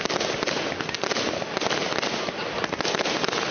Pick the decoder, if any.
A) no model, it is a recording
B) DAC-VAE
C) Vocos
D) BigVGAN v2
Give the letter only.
A